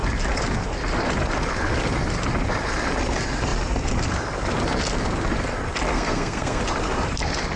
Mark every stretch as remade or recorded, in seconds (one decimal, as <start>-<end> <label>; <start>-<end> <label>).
0.0-5.9 recorded; 5.9-6.6 remade; 6.6-7.6 recorded